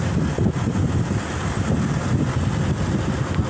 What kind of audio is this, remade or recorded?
recorded